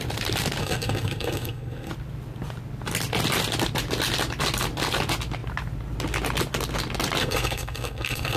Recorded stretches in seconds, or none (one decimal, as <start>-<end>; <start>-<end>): 0.0-0.6; 1.9-7.2